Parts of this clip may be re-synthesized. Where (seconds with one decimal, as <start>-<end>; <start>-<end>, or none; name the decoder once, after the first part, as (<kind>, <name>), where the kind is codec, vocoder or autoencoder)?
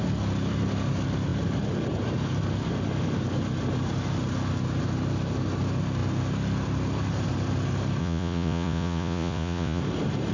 8.0-9.8 (vocoder, Vocos)